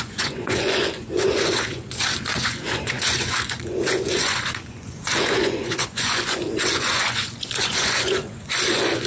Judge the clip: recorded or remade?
remade